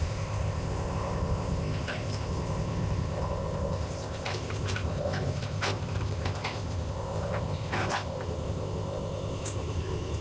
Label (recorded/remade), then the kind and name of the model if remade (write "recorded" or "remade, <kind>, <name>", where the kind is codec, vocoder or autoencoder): remade, codec, ZipCodec